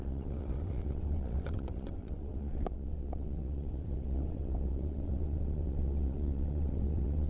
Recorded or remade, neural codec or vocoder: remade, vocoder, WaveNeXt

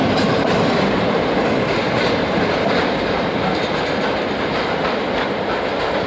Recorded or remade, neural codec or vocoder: recorded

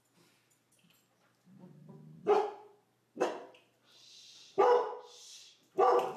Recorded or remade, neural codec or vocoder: remade, vocoder, BigVGAN v2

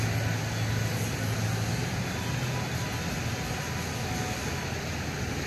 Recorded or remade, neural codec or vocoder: recorded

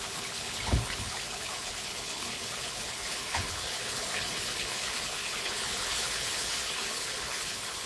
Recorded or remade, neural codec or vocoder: remade, codec, HILCodec